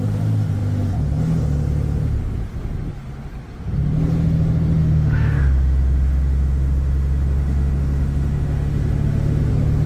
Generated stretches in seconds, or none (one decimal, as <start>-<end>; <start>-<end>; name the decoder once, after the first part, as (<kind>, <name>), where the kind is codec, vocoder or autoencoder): 4.8-9.5 (autoencoder, DAC-VAE)